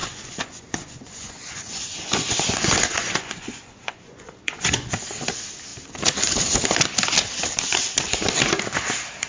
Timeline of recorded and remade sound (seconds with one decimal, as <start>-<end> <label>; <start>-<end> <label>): 0.0-4.9 remade; 4.9-9.3 recorded